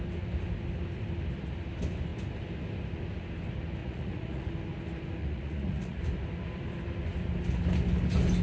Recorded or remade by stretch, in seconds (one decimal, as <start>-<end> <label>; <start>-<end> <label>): 0.0-3.8 recorded; 3.8-4.5 remade; 4.5-5.2 recorded; 5.2-6.0 remade; 6.0-8.4 recorded